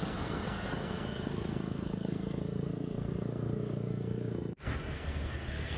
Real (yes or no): no